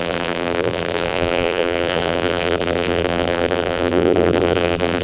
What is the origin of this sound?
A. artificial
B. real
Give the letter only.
A